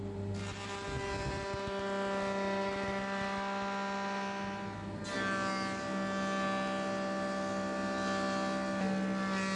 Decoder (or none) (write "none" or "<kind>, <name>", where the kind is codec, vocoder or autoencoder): none